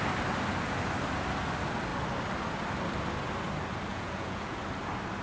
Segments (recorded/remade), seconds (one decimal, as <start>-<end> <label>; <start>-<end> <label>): 0.0-3.9 recorded; 3.9-4.6 remade; 4.6-5.2 recorded